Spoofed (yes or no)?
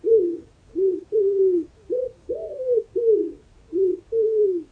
yes